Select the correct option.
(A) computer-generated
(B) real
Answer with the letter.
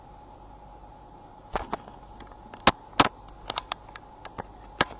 B